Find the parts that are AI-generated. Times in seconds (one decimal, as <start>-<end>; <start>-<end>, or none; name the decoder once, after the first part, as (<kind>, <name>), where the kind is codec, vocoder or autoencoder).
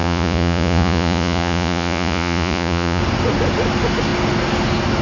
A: 0.0-3.0 (vocoder, Vocos)